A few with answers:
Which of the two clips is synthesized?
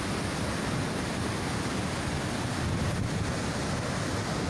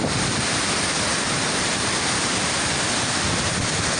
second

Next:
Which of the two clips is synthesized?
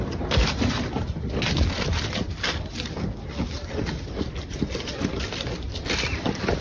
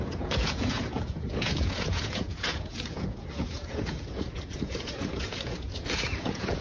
second